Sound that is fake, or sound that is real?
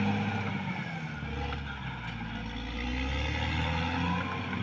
real